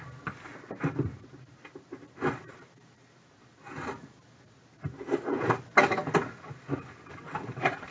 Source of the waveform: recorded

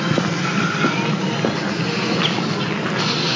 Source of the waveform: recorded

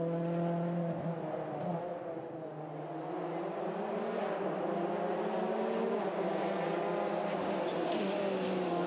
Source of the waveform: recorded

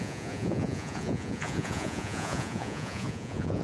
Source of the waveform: remade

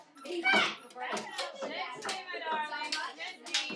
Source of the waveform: recorded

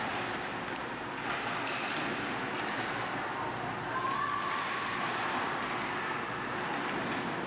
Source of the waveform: recorded